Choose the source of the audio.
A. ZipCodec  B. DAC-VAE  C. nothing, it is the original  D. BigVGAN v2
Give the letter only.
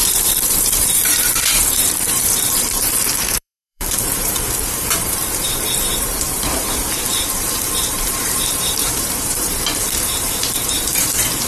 D